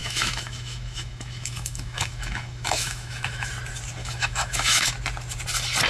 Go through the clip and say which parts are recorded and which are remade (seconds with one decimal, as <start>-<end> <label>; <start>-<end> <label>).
0.0-3.5 remade; 3.5-4.0 recorded; 4.0-4.9 remade; 4.9-5.9 recorded